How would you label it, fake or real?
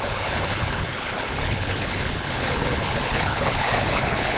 fake